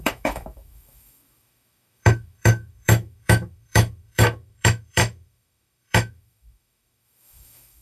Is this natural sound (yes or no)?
no